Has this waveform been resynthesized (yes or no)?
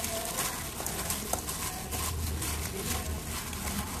no